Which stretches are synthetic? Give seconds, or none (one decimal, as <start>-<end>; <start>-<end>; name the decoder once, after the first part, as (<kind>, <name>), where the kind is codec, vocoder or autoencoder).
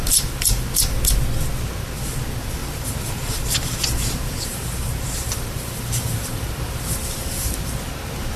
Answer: 2.6-7.6 (vocoder, BigVGAN v2)